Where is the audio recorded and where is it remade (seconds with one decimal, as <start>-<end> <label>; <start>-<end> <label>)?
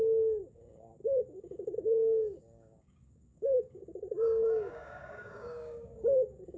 0.0-6.6 remade